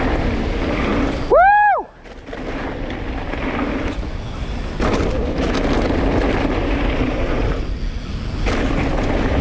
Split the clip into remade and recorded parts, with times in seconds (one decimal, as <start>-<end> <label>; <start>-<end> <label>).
0.0-6.6 recorded; 6.6-7.4 remade; 7.4-9.4 recorded